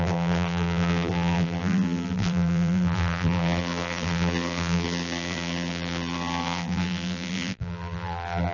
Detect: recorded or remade remade